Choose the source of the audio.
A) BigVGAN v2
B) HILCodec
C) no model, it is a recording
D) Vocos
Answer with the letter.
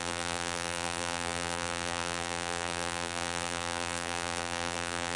A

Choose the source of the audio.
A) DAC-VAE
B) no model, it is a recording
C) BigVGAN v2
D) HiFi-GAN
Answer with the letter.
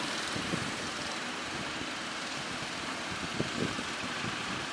C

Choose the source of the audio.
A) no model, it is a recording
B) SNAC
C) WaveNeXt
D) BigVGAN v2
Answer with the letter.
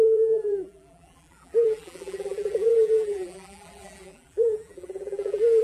D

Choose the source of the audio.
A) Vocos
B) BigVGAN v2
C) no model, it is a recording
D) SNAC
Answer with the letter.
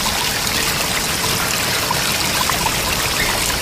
C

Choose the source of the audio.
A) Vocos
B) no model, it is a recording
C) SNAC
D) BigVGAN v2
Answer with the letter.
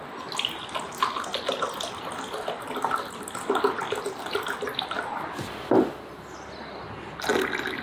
B